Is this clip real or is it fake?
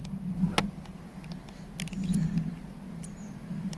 real